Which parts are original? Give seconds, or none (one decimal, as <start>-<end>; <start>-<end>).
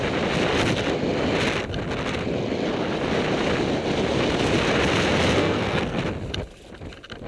0.0-5.4; 6.0-7.3